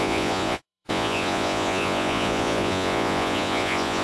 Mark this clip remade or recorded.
remade